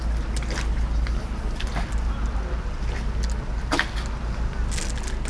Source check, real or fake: real